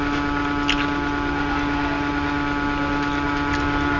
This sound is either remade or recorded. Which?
recorded